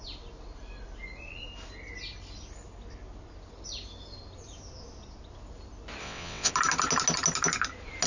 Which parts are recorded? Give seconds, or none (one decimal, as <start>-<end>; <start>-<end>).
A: 0.0-6.0; 6.5-8.1